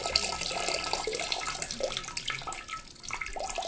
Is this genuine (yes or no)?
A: yes